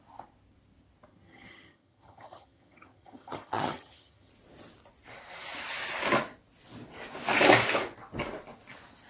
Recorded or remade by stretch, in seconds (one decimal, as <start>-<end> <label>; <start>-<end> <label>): 0.0-1.1 recorded; 1.1-4.3 remade; 4.3-9.1 recorded